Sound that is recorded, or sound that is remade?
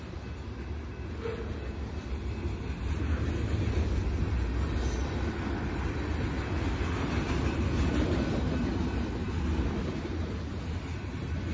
recorded